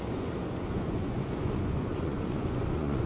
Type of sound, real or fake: fake